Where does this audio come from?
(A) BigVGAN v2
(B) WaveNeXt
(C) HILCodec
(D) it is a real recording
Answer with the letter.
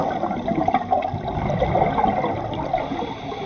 D